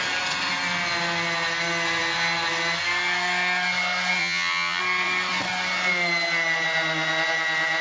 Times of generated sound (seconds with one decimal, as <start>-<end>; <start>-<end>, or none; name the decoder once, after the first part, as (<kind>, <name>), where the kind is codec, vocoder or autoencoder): 4.2-4.8 (vocoder, HiFi-GAN)